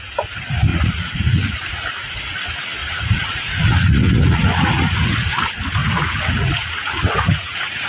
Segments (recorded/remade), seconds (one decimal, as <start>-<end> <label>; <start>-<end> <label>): 0.0-0.7 recorded; 0.7-2.1 remade; 2.1-2.8 recorded; 2.8-5.3 remade; 5.3-5.8 recorded; 5.8-7.9 remade